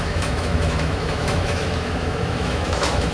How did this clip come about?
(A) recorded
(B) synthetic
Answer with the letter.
B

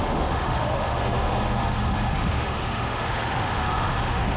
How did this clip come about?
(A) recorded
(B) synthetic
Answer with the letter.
B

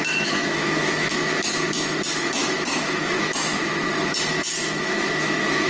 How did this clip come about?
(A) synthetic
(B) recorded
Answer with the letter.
A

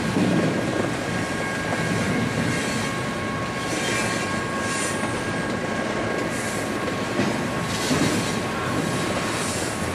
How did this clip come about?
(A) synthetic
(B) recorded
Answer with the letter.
B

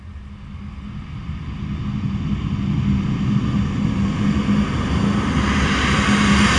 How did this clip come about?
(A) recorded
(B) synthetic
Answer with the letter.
A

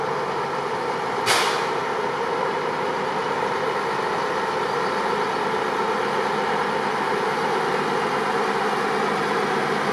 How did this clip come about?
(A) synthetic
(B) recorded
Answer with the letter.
B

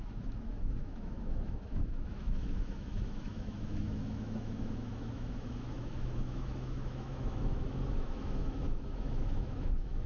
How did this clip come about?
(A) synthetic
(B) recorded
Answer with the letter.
A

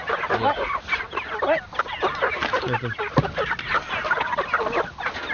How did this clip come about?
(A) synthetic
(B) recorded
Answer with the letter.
B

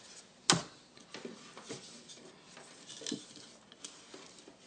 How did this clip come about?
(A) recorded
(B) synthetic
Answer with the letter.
A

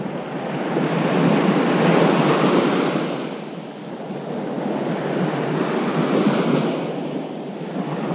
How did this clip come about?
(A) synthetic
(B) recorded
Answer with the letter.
B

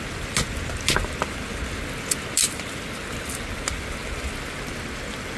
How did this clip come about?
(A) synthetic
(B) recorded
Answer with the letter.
B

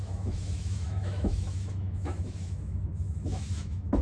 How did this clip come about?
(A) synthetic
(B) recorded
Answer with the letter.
A